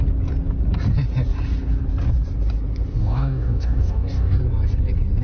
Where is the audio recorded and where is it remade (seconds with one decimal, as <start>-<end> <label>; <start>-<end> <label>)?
0.0-3.0 recorded; 3.0-4.4 remade; 4.4-5.2 recorded